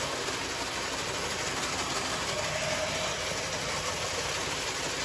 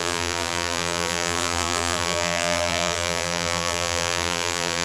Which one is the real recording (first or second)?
first